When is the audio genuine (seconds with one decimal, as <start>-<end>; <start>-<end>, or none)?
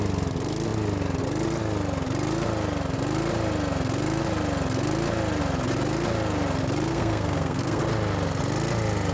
0.0-6.9; 7.8-9.1